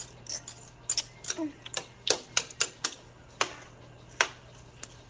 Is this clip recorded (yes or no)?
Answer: yes